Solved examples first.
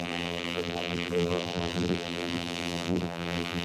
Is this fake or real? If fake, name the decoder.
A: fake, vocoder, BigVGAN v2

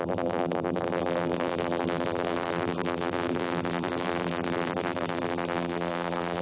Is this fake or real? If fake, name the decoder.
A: fake, vocoder, BigVGAN v2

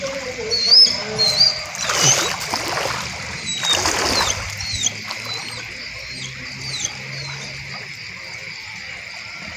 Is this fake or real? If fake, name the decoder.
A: real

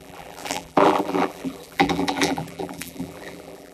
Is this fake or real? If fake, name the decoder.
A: fake, vocoder, BigVGAN v2